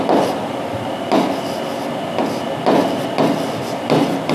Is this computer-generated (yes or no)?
no